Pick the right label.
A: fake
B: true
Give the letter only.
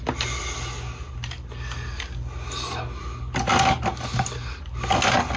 B